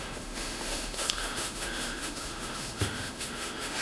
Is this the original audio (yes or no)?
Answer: no